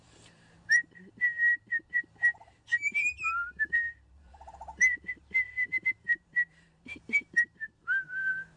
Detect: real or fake fake